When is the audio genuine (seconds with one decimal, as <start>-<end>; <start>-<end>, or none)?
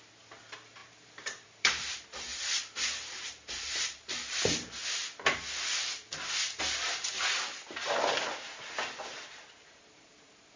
0.0-0.8; 1.9-10.6